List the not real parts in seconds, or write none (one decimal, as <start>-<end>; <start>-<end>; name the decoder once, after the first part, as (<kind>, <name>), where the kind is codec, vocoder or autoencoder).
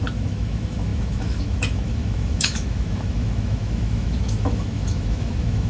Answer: 0.0-5.7 (autoencoder, DAC-VAE)